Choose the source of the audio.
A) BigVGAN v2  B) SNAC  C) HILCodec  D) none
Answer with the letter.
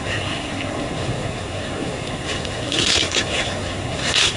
B